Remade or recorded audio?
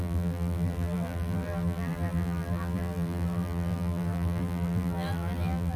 remade